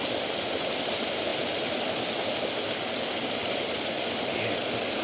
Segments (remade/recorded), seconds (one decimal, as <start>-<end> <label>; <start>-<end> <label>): 0.0-5.0 recorded